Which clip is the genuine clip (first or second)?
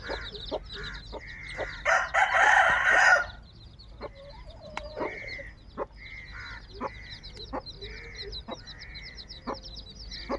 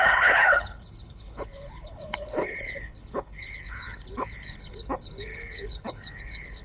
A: first